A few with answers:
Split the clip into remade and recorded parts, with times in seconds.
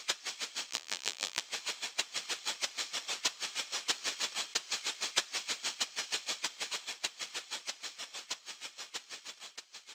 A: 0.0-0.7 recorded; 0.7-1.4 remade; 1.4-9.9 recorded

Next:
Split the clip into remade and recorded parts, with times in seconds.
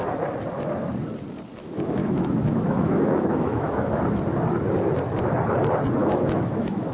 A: 0.0-1.6 recorded; 1.6-4.0 remade; 4.0-6.0 recorded; 6.0-6.9 remade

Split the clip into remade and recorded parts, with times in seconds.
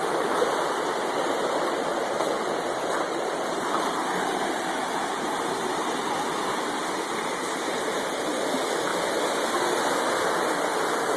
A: 0.0-11.2 recorded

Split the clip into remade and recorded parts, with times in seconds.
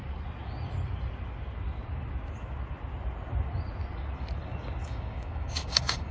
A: 0.0-4.8 recorded; 4.8-6.1 remade